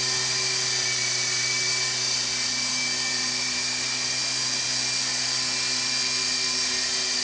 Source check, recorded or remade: recorded